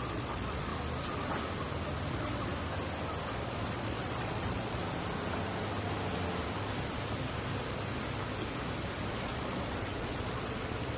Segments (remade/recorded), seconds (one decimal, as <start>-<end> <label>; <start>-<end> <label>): 0.0-0.7 remade; 0.7-2.1 recorded; 2.1-2.5 remade; 2.5-3.3 recorded; 3.3-4.8 remade; 4.8-9.1 recorded; 9.1-11.0 remade